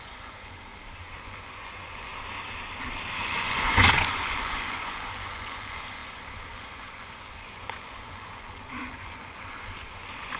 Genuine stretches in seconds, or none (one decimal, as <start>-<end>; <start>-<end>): 0.7-1.2; 2.1-3.2